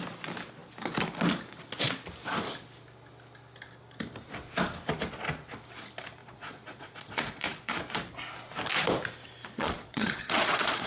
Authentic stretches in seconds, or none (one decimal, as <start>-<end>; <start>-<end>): 0.0-6.2; 7.8-9.4